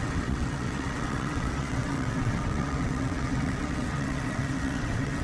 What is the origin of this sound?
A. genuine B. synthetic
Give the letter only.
B